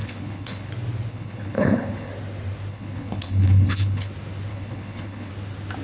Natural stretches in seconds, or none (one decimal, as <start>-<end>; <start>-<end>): 0.7-1.1; 2.1-2.7; 4.1-4.5; 5.3-5.8